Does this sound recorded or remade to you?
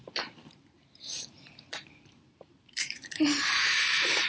remade